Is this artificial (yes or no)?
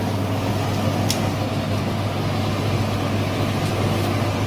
no